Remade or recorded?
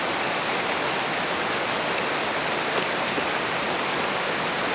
recorded